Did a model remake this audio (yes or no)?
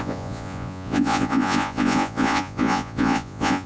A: yes